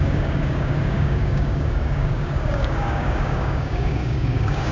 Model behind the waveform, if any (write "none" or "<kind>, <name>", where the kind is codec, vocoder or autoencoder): codec, DAC